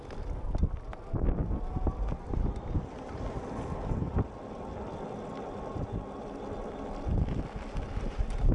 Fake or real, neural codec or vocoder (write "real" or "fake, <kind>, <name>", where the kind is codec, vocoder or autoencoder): real